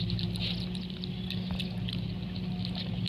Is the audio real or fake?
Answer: real